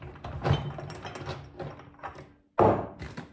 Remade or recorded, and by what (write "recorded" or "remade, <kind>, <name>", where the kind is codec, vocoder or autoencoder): recorded